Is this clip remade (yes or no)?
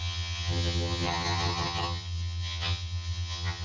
yes